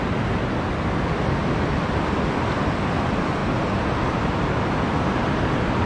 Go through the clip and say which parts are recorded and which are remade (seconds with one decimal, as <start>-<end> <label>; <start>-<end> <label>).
0.0-3.4 recorded; 3.4-4.7 remade; 4.7-5.9 recorded